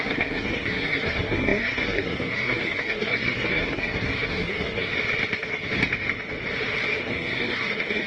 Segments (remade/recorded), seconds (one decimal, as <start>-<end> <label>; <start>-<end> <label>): 0.0-4.9 remade; 4.9-7.0 recorded; 7.0-8.1 remade